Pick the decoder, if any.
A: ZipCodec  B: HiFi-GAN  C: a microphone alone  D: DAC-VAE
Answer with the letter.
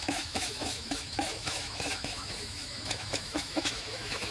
D